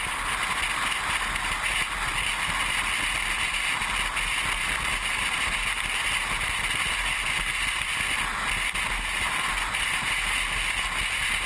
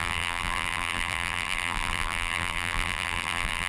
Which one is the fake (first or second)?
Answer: second